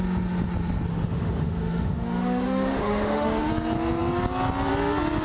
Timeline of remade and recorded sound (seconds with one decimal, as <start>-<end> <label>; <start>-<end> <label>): 0.0-0.9 recorded; 0.9-3.5 remade; 3.5-5.2 recorded